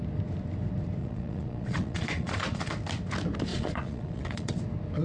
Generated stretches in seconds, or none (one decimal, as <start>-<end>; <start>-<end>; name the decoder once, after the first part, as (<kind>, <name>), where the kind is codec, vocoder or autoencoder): 1.0-2.7 (vocoder, Vocos); 3.5-4.6